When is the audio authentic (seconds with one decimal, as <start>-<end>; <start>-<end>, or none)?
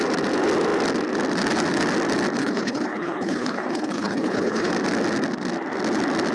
0.0-2.4; 4.7-6.3